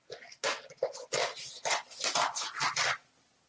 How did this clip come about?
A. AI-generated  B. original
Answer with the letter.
B